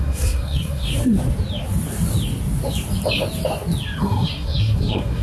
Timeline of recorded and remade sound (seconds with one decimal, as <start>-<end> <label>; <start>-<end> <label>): 0.0-0.9 remade; 0.9-4.0 recorded; 4.0-5.2 remade